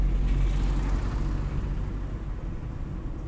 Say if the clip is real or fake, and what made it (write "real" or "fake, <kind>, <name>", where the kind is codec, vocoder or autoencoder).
real